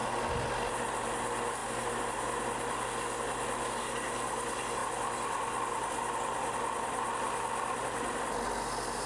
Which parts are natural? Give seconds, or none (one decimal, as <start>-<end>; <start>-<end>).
0.0-9.1